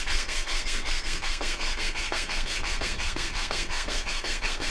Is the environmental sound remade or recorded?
remade